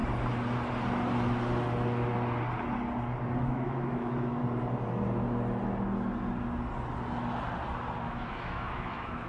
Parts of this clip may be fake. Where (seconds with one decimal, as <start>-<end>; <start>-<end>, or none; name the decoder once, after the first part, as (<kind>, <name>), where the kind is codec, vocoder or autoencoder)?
3.4-4.4 (autoencoder, DAC-VAE); 8.0-9.3